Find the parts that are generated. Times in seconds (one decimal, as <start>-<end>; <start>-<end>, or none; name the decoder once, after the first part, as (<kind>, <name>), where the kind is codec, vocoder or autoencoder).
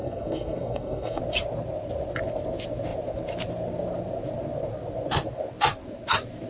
0.0-1.2 (codec, SNAC)